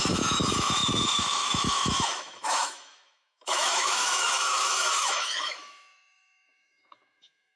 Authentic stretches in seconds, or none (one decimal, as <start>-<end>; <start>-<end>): none